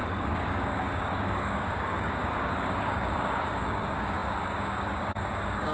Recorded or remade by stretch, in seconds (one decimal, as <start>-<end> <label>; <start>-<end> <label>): 0.0-5.7 remade